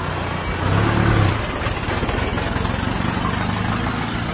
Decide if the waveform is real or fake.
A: real